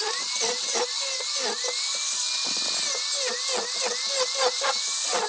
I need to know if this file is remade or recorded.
recorded